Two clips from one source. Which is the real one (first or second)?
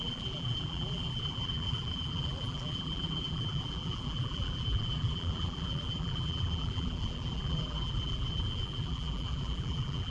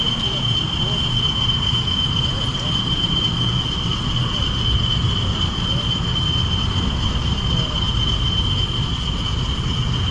second